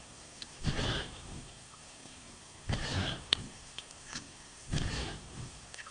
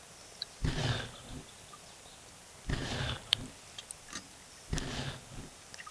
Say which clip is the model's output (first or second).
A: first